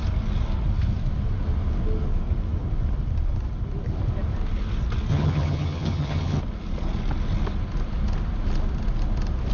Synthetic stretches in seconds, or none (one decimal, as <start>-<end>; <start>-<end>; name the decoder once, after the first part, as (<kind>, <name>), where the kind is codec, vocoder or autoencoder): 5.1-6.4 (vocoder, HiFi-GAN)